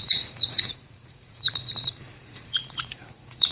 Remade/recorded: remade